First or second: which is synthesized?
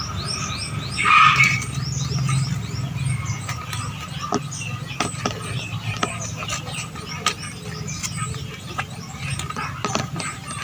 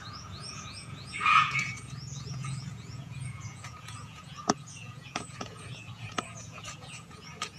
second